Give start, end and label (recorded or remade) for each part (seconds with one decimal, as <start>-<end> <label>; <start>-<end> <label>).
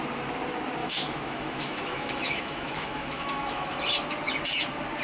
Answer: 0.0-0.8 recorded; 0.8-3.8 remade; 3.8-5.0 recorded